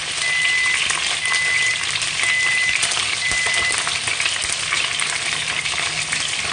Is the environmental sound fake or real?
real